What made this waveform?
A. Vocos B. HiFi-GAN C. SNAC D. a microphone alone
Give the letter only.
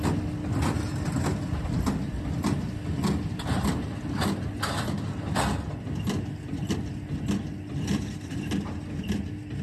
D